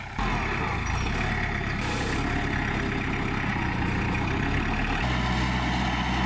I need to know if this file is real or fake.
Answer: real